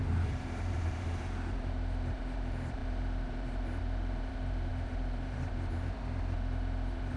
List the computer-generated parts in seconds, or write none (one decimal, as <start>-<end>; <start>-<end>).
0.0-7.2